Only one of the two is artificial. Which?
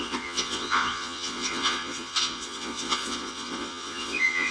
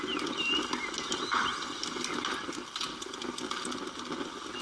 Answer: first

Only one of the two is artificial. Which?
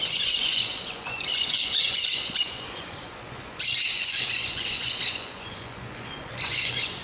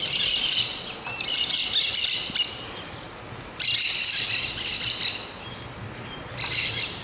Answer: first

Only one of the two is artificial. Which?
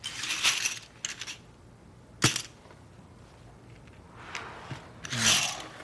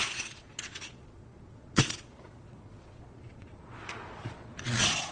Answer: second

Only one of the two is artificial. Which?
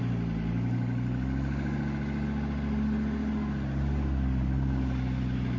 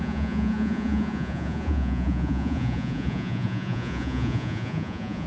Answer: second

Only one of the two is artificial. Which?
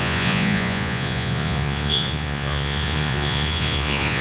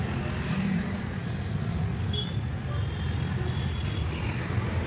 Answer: first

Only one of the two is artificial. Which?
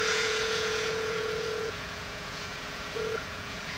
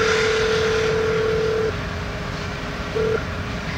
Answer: first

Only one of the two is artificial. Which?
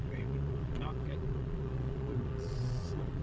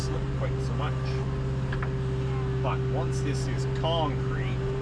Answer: first